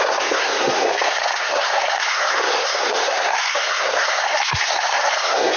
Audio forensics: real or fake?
fake